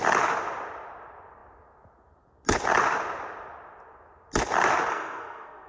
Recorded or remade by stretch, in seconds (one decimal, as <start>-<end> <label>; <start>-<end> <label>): 0.0-4.9 recorded; 4.9-5.7 remade